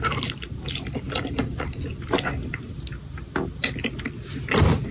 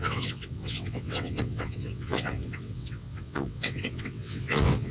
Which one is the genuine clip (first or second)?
first